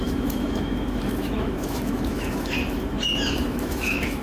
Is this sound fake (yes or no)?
yes